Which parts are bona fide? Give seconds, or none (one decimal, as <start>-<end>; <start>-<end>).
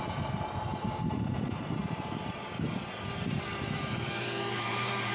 none